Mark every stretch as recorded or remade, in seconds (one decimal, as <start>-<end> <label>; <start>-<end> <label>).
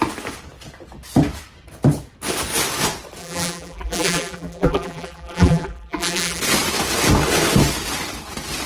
0.0-3.2 recorded; 3.2-6.4 remade; 6.4-8.7 recorded